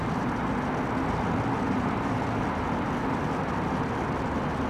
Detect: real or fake real